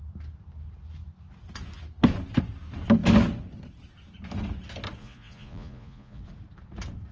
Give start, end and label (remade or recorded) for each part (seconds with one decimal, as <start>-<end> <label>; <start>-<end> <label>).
0.0-5.0 recorded; 5.0-6.2 remade; 6.2-7.1 recorded